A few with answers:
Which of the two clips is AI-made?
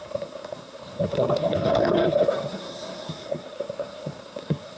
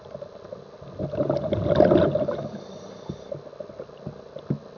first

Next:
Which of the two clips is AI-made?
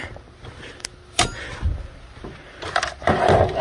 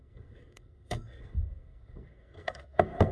second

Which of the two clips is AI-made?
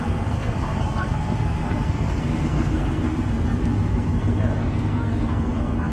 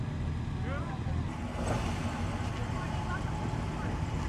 first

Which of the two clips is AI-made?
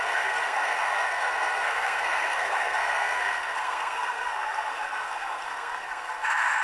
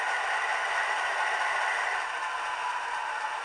first